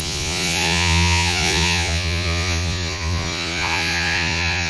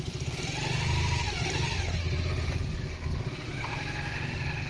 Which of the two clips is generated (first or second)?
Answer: first